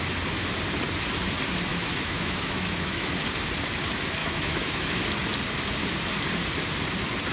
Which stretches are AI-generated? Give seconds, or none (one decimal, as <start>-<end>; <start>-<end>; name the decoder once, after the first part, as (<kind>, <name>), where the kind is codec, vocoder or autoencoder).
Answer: 1.7-3.1 (autoencoder, DAC-VAE); 4.2-5.0